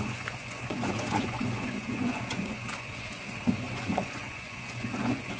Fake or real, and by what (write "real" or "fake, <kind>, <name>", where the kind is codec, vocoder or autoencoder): fake, vocoder, Vocos